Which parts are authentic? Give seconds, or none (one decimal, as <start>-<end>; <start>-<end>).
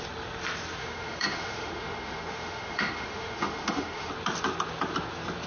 0.0-0.8; 4.1-5.5